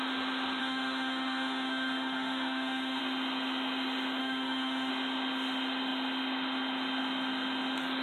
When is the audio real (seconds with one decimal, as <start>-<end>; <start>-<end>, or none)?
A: 0.0-0.6; 3.0-4.2; 4.9-8.0